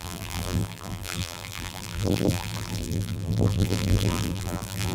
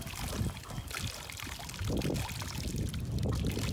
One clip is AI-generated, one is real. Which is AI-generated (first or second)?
first